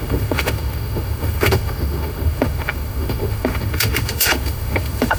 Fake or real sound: fake